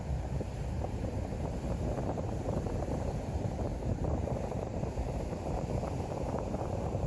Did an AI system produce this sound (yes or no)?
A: yes